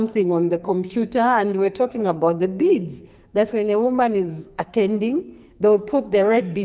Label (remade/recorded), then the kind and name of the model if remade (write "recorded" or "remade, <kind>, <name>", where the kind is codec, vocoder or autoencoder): remade, codec, SNAC